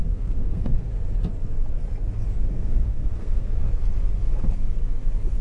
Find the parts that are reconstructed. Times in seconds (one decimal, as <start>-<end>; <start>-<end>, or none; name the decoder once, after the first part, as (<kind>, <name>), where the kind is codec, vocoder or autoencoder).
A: 0.0-0.9 (codec, SNAC); 2.5-3.7